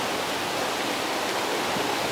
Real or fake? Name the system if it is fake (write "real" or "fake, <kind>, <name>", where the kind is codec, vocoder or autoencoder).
real